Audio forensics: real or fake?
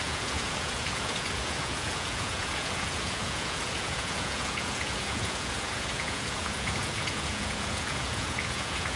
fake